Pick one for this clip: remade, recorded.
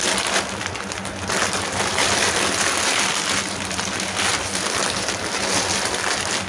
recorded